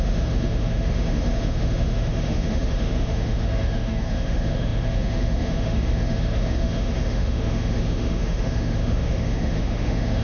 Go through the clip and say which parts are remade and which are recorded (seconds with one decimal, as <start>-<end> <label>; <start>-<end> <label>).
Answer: 0.0-10.2 remade